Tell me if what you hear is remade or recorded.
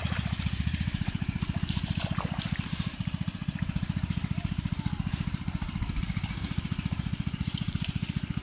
remade